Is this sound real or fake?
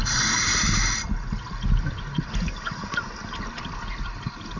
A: real